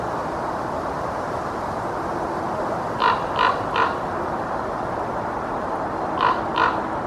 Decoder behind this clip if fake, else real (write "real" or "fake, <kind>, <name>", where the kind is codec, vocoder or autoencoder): real